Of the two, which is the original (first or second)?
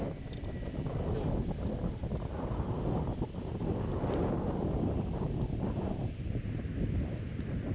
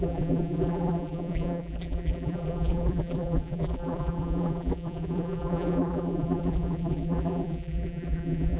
first